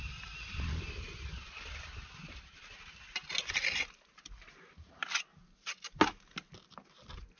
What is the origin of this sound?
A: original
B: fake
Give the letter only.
A